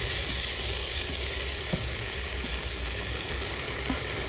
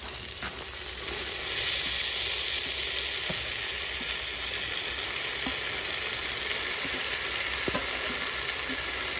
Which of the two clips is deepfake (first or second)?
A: first